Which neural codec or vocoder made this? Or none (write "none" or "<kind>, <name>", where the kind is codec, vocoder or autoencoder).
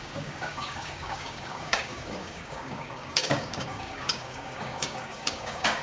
codec, DAC